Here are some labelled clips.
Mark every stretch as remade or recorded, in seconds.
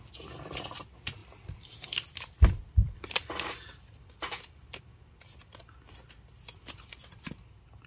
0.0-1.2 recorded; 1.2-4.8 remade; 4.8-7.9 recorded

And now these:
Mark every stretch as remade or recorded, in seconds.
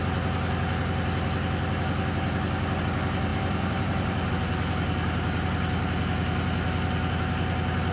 0.0-3.3 recorded; 3.3-4.3 remade; 4.3-7.9 recorded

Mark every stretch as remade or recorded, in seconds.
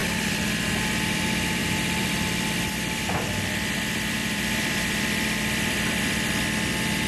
0.0-0.9 remade; 0.9-1.6 recorded; 1.6-3.0 remade; 3.0-4.2 recorded; 4.2-6.4 remade; 6.4-7.1 recorded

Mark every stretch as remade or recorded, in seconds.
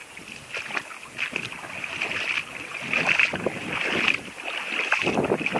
0.0-5.6 recorded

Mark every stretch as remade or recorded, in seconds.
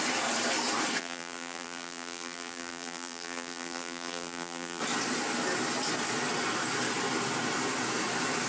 0.0-1.0 recorded; 1.0-4.8 remade; 4.8-8.5 recorded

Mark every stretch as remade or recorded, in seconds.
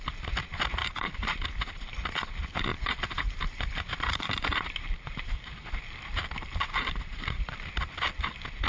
0.0-0.8 recorded; 0.8-1.5 remade; 1.5-2.7 recorded; 2.7-7.7 remade; 7.7-8.7 recorded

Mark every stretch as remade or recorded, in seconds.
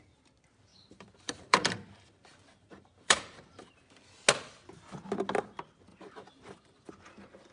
0.0-0.7 recorded; 0.7-4.0 remade; 4.0-5.9 recorded; 5.9-6.9 remade; 6.9-7.5 recorded